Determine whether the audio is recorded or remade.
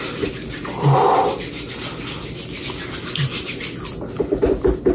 recorded